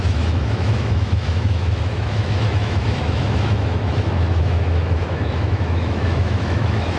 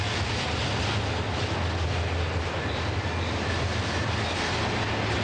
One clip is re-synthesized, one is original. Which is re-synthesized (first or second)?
first